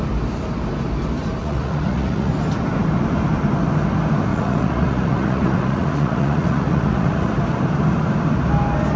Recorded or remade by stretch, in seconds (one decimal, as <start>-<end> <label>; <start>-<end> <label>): 0.0-1.4 recorded; 1.4-2.3 remade; 2.3-4.3 recorded; 4.3-7.3 remade; 7.3-9.0 recorded